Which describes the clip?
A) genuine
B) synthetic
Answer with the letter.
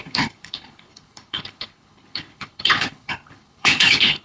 B